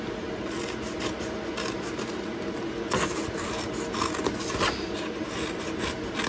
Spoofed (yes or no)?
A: no